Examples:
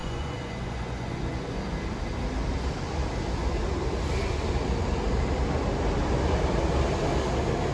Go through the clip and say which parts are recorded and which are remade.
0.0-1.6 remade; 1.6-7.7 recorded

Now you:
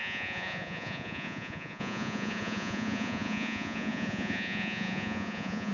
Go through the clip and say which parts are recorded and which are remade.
0.0-5.7 remade